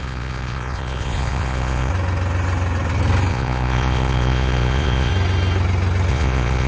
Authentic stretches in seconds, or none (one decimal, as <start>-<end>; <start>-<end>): 1.9-3.3; 5.1-6.1

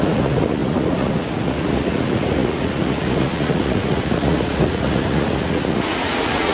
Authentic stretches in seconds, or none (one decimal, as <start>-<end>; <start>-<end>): none

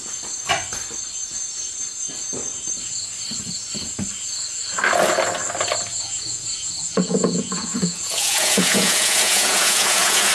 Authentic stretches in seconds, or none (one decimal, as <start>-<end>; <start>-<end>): 0.0-5.9

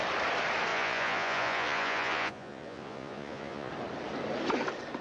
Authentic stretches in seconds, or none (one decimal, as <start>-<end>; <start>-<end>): 0.0-0.7; 3.7-5.0

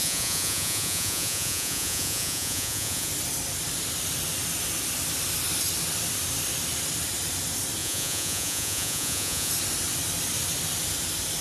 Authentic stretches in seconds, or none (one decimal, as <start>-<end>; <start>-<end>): 3.1-7.8; 9.5-11.4

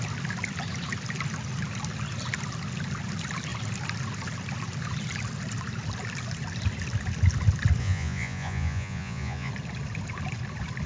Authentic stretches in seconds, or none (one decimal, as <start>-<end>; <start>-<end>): 0.0-7.8; 9.5-10.9